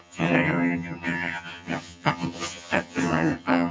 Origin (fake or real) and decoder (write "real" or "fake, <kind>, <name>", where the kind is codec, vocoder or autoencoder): fake, vocoder, HiFi-GAN